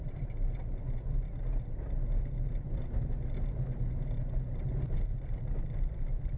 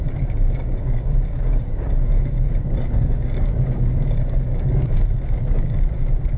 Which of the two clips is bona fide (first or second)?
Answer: first